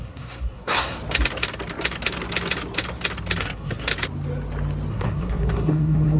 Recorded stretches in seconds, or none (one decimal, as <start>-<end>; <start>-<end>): 1.0-3.4; 3.9-4.9